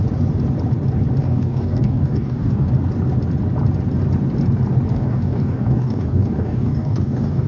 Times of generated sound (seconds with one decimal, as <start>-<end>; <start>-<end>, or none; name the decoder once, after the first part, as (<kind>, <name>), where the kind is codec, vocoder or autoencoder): 1.2-2.7 (codec, DAC); 4.9-7.5